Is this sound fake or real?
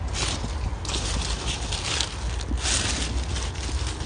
real